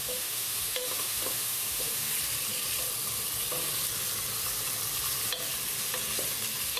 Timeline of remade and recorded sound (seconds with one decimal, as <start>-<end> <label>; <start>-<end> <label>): 0.0-2.1 remade; 2.1-6.8 recorded